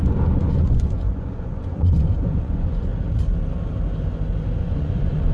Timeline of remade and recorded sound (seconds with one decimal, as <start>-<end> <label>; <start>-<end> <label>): 0.0-2.9 remade; 2.9-4.6 recorded; 4.6-5.3 remade